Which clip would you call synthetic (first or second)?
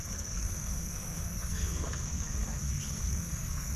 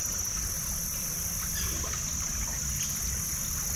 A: first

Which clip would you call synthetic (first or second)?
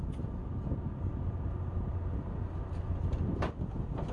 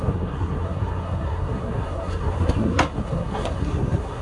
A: second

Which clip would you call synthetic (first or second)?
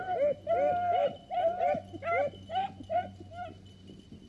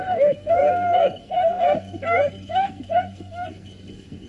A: second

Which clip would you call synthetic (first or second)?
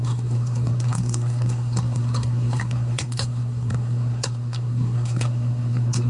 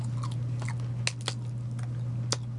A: first